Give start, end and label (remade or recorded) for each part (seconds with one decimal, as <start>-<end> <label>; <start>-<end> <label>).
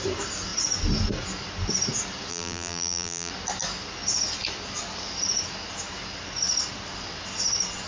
0.0-2.3 recorded; 2.3-3.3 remade; 3.3-7.9 recorded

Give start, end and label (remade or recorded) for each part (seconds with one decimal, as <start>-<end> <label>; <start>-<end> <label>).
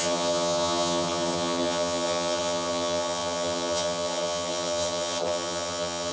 0.0-6.1 remade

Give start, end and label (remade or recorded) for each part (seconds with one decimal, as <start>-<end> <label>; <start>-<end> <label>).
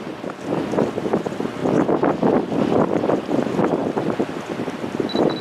0.0-5.4 recorded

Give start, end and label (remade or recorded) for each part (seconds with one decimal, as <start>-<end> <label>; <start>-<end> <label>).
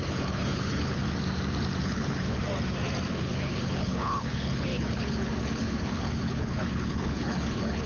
0.0-1.0 remade; 1.0-1.8 recorded; 1.8-2.4 remade; 2.4-3.1 recorded; 3.1-7.9 remade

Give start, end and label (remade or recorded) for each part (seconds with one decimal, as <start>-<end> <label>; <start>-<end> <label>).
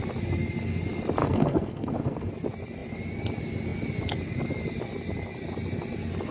0.0-1.2 recorded; 1.2-2.3 remade; 2.3-6.3 recorded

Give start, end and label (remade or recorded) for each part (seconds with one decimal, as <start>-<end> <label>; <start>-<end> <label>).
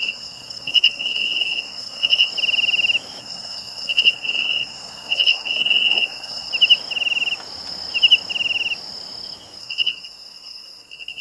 0.0-2.3 remade; 2.3-3.2 recorded; 3.2-6.5 remade; 6.5-9.6 recorded; 9.6-11.2 remade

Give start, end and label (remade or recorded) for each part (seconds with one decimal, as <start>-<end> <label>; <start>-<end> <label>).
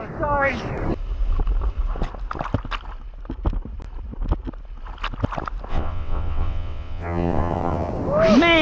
0.0-5.7 recorded; 5.7-7.9 remade; 7.9-8.6 recorded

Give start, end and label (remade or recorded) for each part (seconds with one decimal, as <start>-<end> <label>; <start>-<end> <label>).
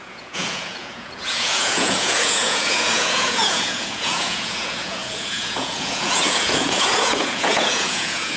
0.0-8.4 remade